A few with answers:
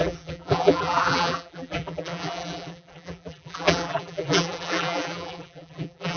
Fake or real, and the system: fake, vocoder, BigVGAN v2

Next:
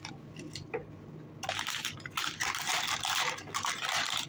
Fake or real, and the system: real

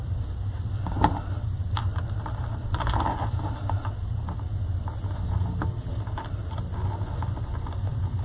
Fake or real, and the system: real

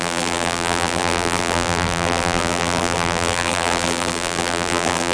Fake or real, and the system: fake, vocoder, BigVGAN v2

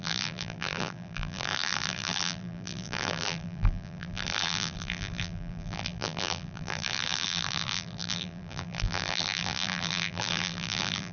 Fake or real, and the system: fake, vocoder, BigVGAN v2